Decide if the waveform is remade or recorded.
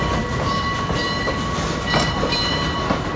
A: recorded